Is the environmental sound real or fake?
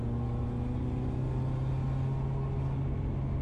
real